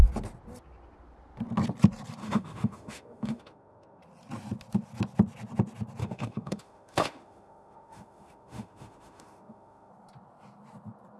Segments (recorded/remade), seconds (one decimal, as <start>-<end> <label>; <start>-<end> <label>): 0.0-2.2 recorded; 2.2-4.0 remade; 4.0-6.0 recorded; 6.0-9.9 remade; 9.9-11.2 recorded